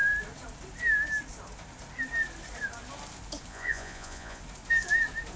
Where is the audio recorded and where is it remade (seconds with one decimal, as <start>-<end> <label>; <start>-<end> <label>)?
0.0-3.5 recorded; 3.5-4.4 remade; 4.4-5.4 recorded